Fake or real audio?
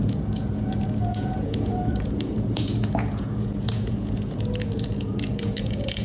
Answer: fake